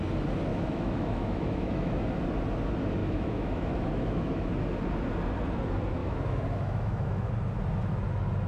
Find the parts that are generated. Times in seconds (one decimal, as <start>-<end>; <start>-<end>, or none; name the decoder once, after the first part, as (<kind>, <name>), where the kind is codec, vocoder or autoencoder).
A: 0.5-2.0 (autoencoder, DAC-VAE); 3.0-4.5; 6.0-7.3